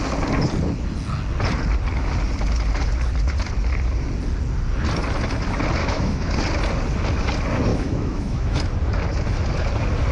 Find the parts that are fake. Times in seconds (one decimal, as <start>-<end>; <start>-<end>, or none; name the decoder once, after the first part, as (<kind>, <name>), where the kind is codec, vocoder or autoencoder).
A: 5.8-6.3 (autoencoder, DAC-VAE); 7.7-8.6